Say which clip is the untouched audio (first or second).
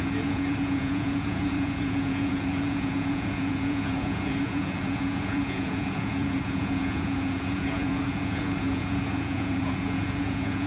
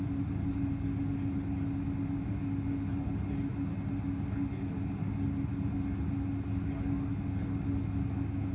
second